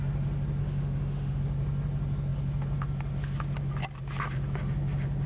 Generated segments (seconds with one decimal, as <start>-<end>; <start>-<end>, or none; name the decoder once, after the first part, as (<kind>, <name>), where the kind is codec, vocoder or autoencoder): 0.6-1.4 (autoencoder, DAC-VAE)